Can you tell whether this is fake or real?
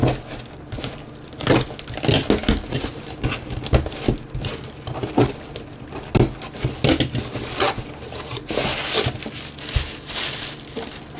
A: real